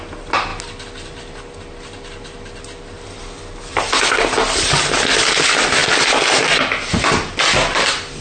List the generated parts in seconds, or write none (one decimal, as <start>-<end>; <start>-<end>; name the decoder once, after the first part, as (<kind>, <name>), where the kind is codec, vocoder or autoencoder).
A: none